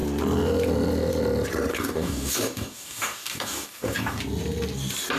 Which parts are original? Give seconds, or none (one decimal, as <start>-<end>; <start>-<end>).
0.0-1.7; 4.2-5.2